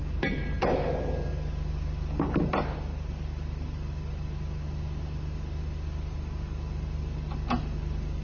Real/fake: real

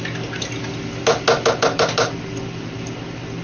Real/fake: real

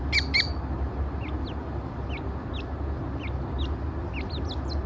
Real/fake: real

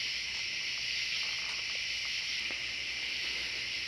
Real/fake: real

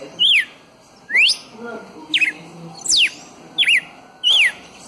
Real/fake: real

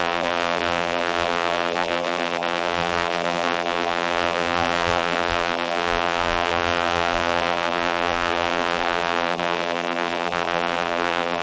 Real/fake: fake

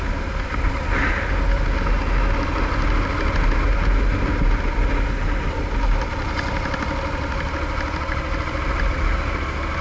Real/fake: real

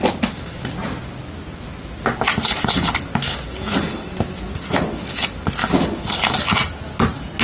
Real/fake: real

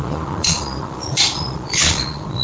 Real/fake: fake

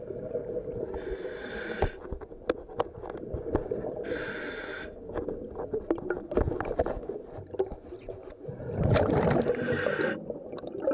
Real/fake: real